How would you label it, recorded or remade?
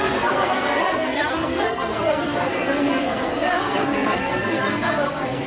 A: remade